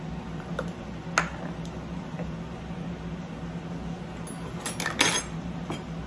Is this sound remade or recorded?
recorded